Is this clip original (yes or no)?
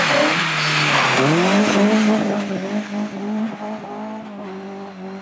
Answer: yes